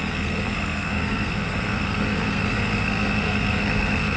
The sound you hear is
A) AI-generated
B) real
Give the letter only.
A